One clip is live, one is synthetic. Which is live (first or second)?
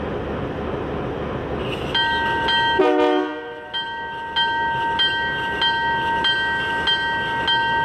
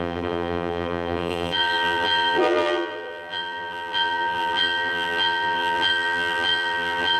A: first